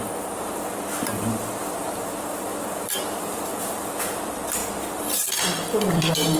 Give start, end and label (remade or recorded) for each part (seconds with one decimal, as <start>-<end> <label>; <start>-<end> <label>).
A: 0.0-4.6 remade; 4.6-5.9 recorded; 5.9-6.4 remade